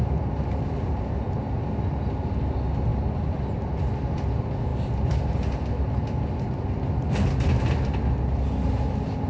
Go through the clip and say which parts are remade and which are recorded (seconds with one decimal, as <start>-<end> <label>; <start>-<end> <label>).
0.0-9.3 recorded